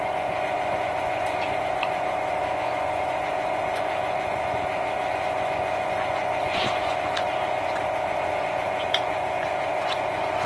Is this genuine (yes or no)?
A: no